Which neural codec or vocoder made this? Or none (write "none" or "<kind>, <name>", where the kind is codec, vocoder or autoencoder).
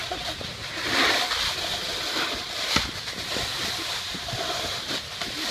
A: none